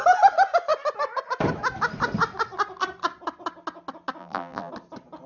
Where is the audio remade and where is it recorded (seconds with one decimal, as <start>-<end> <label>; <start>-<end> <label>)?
0.0-4.2 recorded; 4.2-4.7 remade; 4.7-5.3 recorded